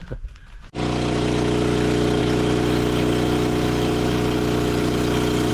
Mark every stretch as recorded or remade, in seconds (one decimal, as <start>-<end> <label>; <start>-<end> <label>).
0.0-5.5 recorded